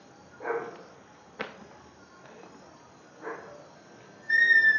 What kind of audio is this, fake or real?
real